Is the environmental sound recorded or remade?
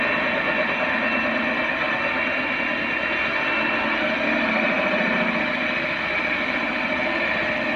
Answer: recorded